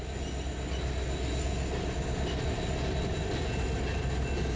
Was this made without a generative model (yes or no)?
yes